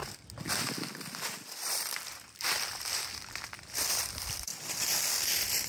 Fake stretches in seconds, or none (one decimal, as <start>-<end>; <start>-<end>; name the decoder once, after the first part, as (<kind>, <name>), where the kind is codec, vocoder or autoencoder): 1.6-4.5 (vocoder, BigVGAN v2); 5.1-5.7